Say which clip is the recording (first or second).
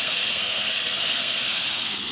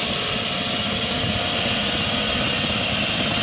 second